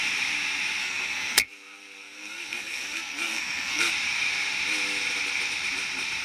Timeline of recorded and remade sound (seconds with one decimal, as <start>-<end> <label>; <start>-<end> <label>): 0.0-0.8 recorded; 0.8-3.9 remade; 3.9-6.2 recorded